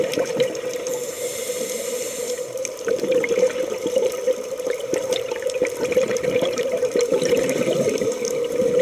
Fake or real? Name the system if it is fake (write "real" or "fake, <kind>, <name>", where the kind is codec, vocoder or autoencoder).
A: fake, vocoder, BigVGAN v2